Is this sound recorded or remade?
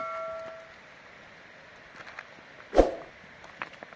recorded